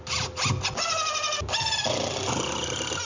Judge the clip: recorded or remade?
recorded